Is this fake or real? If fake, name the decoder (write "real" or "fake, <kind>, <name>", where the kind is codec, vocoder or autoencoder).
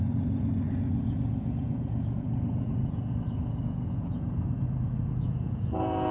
fake, vocoder, Vocos